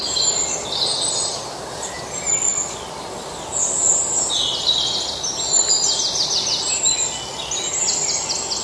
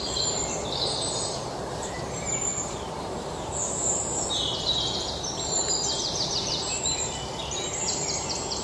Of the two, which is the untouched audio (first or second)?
first